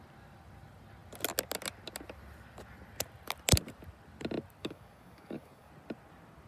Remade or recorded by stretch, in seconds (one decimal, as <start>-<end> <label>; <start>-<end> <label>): 0.0-4.6 recorded; 4.6-5.7 remade; 5.7-6.5 recorded